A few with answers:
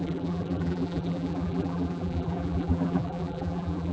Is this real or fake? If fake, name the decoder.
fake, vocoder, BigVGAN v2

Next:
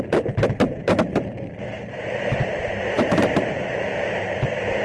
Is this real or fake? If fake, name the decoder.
fake, vocoder, BigVGAN v2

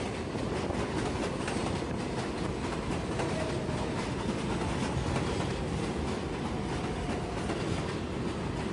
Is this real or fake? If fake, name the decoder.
real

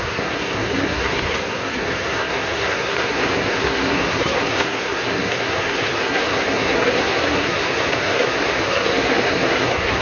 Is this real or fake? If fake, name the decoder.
fake, codec, SNAC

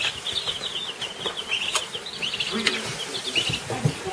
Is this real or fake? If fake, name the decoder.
real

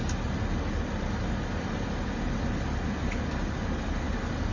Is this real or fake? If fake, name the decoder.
real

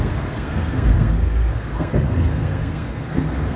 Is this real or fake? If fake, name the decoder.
fake, codec, SNAC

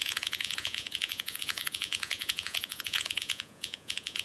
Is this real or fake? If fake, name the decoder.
fake, vocoder, Vocos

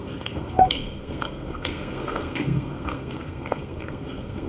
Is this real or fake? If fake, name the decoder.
fake, codec, SNAC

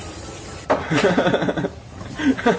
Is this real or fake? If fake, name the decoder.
real